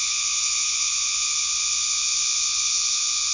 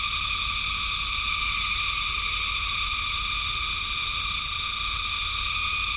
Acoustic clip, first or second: second